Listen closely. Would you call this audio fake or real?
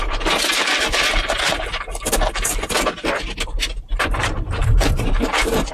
fake